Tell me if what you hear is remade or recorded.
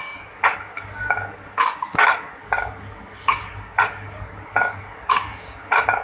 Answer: remade